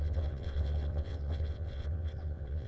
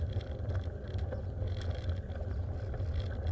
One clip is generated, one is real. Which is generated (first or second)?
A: first